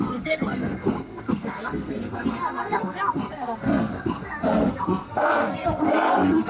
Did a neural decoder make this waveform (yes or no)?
yes